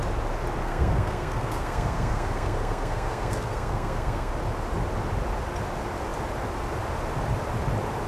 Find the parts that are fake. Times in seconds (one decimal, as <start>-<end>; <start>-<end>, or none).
0.6-4.3